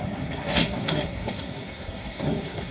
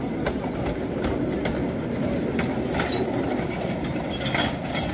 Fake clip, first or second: first